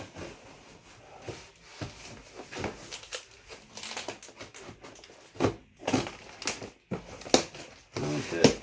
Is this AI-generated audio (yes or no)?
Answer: no